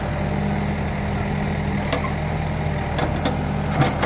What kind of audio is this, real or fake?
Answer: real